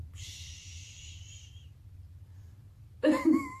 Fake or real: real